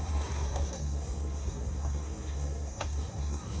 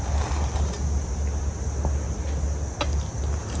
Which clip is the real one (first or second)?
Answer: second